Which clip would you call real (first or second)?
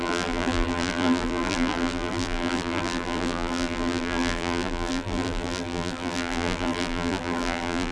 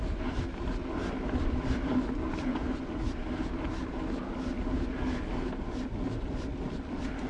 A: second